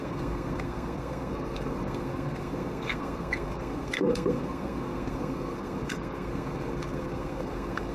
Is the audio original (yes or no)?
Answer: no